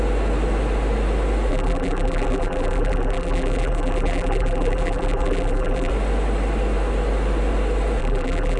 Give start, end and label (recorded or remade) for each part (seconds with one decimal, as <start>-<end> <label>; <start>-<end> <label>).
0.0-1.5 recorded; 1.5-5.9 remade; 5.9-8.0 recorded; 8.0-8.6 remade